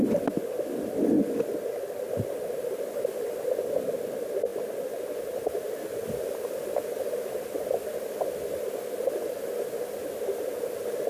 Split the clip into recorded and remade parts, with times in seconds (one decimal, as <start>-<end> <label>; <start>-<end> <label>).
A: 0.0-11.1 recorded

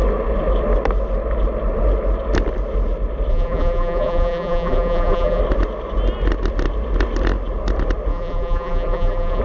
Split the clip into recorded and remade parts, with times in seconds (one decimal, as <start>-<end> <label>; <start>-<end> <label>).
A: 0.0-3.3 recorded; 3.3-5.4 remade; 5.4-8.1 recorded; 8.1-9.4 remade

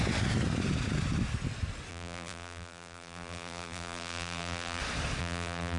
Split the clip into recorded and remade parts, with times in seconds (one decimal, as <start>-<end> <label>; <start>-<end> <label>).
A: 0.0-1.9 recorded; 1.9-4.8 remade; 4.8-5.2 recorded; 5.2-5.8 remade